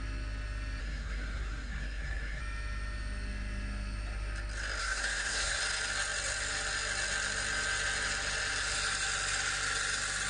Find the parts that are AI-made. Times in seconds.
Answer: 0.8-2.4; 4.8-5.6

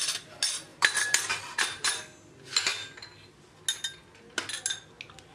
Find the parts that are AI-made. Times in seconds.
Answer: 0.7-2.0